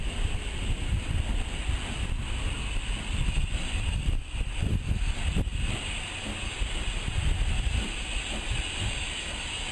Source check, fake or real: real